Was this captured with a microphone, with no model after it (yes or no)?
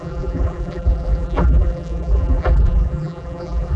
no